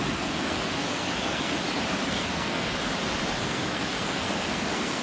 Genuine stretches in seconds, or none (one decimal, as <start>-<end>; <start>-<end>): 1.5-2.1; 2.7-3.4